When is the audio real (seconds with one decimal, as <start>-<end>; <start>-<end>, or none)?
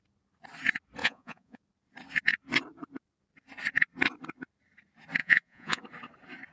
0.0-1.0; 1.6-5.2; 5.8-6.5